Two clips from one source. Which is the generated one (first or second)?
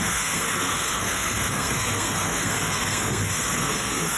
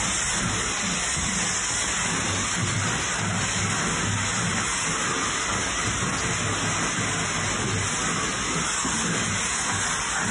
first